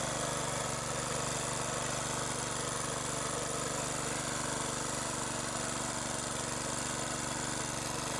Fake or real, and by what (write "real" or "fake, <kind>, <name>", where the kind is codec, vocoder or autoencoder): real